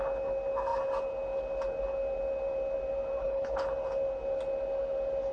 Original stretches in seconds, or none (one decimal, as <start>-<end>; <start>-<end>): 0.0-3.2; 3.7-5.3